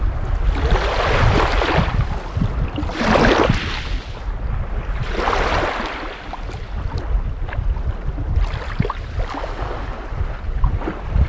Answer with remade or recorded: recorded